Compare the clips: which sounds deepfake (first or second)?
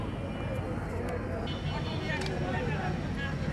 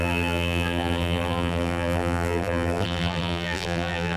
second